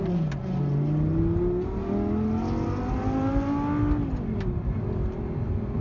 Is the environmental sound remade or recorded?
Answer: recorded